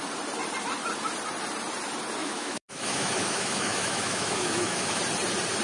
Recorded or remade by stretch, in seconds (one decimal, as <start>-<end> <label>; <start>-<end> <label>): 0.0-2.2 recorded; 2.2-5.0 remade; 5.0-5.6 recorded